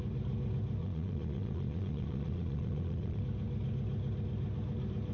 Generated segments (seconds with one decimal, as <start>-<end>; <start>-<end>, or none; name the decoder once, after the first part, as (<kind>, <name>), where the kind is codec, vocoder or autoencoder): 0.8-3.2 (vocoder, Vocos)